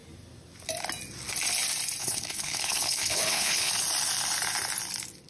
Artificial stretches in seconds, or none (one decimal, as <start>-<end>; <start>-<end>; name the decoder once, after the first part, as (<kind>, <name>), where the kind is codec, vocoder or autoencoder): 2.0-3.7 (codec, HILCodec)